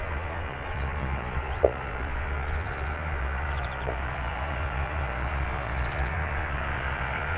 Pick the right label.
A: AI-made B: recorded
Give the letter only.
A